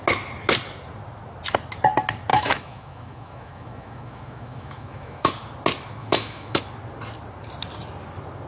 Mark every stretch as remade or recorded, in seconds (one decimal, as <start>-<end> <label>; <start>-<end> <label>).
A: 0.0-2.3 recorded; 2.3-5.3 remade; 5.3-6.0 recorded; 6.0-6.6 remade; 6.6-8.5 recorded